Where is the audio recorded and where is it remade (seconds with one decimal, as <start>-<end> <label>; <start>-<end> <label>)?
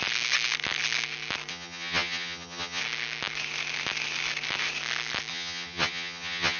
0.0-1.5 recorded; 1.5-2.8 remade; 2.8-5.3 recorded; 5.3-6.6 remade